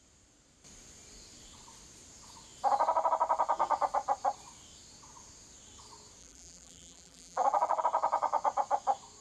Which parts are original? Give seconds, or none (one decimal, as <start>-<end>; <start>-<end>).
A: 0.0-6.2; 7.8-9.2